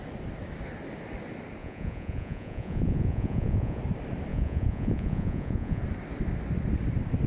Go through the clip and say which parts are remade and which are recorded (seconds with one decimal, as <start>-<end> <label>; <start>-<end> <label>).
0.0-1.6 recorded; 1.6-3.8 remade; 3.8-4.3 recorded; 4.3-5.8 remade; 5.8-7.3 recorded